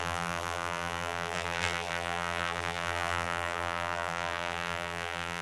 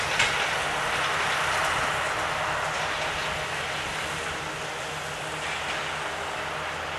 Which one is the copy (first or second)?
first